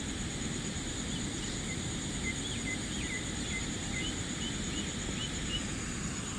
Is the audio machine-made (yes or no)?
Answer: no